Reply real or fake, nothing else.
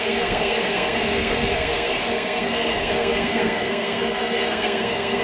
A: fake